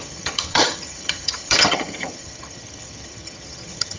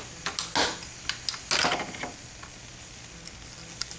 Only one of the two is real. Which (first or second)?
second